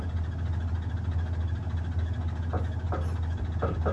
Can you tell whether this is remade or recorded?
recorded